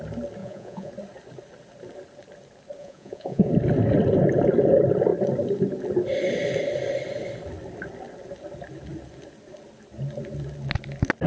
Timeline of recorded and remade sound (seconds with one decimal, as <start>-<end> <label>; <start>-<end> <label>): 0.0-0.4 recorded; 0.4-0.9 remade; 0.9-2.8 recorded; 2.8-3.5 remade; 3.5-11.3 recorded